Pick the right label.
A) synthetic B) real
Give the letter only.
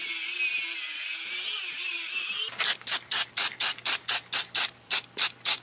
B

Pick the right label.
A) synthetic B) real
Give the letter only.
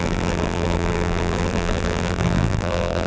A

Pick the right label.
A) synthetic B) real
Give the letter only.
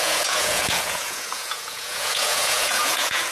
A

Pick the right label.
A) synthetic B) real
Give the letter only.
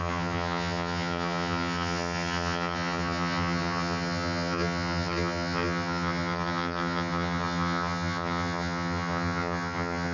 A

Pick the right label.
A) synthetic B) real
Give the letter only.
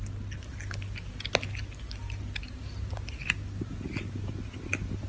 B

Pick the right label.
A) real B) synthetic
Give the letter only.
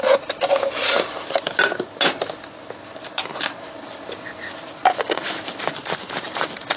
A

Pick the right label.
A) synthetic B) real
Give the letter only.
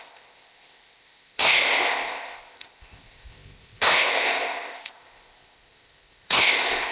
A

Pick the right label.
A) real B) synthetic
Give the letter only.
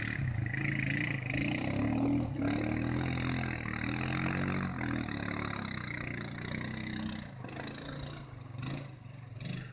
A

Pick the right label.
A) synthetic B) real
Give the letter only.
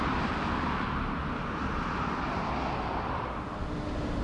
B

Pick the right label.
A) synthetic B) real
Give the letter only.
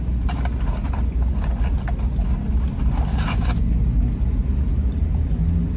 B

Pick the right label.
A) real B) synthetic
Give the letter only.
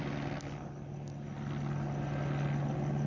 A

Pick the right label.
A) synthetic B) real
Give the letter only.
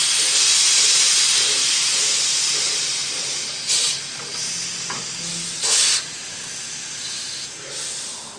B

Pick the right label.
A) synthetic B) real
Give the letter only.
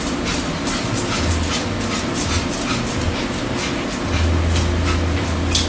B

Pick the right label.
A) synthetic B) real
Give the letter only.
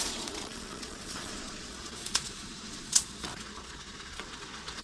A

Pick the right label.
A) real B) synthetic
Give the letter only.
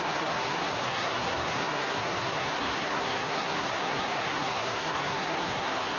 B